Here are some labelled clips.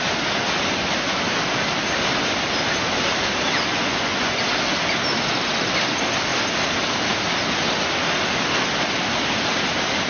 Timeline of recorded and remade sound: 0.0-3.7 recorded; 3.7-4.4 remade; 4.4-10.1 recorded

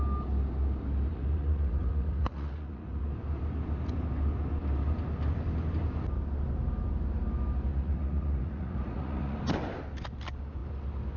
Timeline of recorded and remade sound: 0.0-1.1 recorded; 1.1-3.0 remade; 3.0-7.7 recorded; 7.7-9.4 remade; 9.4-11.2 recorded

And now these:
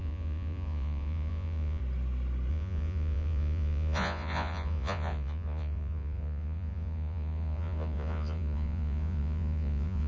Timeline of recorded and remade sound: 0.0-1.8 remade; 1.8-2.5 recorded; 2.5-10.1 remade